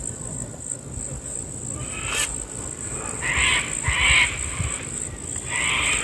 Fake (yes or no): no